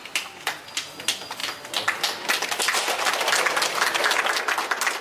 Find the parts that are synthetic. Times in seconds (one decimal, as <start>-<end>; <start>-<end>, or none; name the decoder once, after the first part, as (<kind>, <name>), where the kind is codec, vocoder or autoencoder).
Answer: none